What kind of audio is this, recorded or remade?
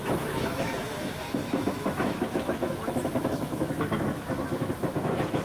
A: remade